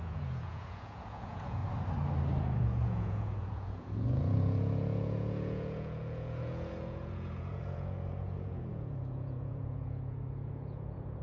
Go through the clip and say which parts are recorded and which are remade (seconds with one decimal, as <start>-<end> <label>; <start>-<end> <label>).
0.0-1.6 remade; 1.6-2.4 recorded; 2.4-11.2 remade